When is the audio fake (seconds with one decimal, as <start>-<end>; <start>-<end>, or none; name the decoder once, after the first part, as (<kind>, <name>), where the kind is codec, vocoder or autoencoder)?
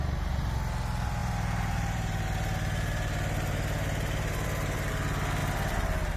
1.2-4.9 (vocoder, BigVGAN v2); 5.4-6.2